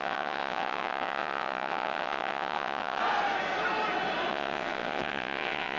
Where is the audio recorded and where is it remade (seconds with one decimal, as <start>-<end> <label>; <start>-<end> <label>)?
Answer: 0.0-3.0 remade; 3.0-4.3 recorded; 4.3-5.8 remade